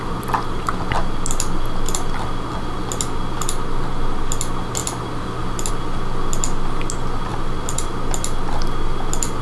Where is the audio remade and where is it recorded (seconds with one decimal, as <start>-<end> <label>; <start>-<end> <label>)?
0.0-9.4 recorded